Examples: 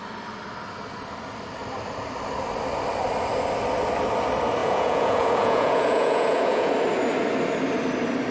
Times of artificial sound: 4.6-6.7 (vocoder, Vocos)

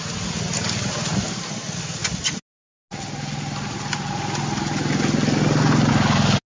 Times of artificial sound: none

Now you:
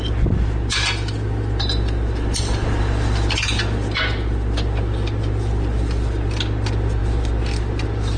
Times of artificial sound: none

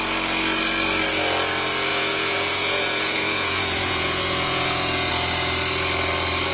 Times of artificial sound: 1.9-5.1 (vocoder, Vocos)

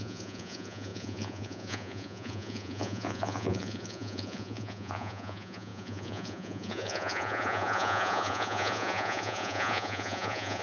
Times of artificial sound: 0.0-10.6 (vocoder, Vocos)